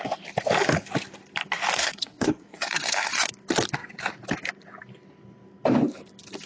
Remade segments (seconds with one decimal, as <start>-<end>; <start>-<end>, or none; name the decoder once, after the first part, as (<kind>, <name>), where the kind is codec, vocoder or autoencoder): 1.8-3.3 (codec, SNAC)